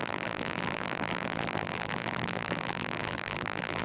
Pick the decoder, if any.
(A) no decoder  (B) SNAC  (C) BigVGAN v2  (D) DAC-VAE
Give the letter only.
C